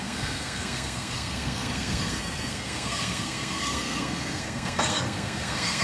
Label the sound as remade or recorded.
remade